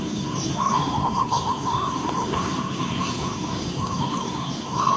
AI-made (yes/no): yes